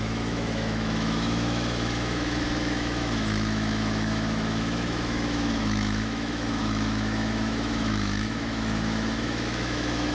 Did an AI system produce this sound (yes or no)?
yes